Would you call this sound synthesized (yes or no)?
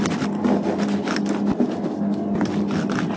no